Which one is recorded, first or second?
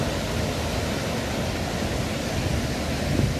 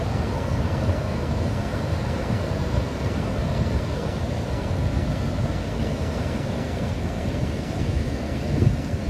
first